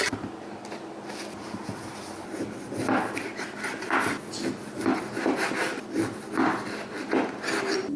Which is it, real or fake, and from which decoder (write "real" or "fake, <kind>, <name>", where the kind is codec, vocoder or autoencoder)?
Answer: real